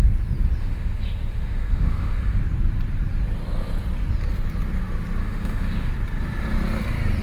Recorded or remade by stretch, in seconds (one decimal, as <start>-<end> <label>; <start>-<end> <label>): 0.0-0.6 recorded; 0.6-2.4 remade; 2.4-5.2 recorded; 5.2-5.9 remade; 5.9-7.2 recorded